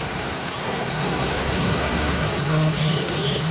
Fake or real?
fake